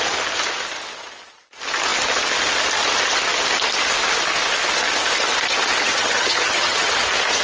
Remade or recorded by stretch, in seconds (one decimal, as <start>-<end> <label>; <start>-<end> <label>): 0.0-5.8 recorded; 5.8-6.9 remade; 6.9-7.4 recorded